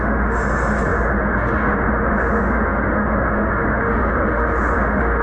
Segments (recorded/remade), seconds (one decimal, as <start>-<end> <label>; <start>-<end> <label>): 0.0-5.2 remade